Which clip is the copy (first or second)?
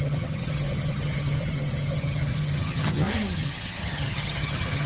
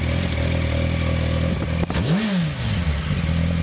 first